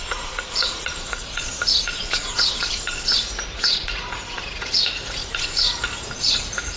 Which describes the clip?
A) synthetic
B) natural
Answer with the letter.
A